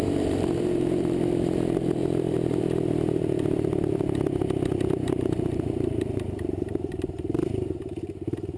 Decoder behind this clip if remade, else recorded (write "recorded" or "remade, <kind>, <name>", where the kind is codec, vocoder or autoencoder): remade, vocoder, BigVGAN v2